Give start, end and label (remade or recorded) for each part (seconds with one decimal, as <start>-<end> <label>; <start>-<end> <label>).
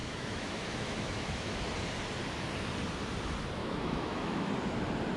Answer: 0.0-1.6 remade; 1.6-3.6 recorded; 3.6-4.5 remade; 4.5-5.2 recorded